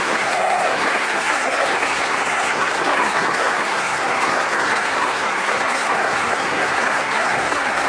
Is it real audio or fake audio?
fake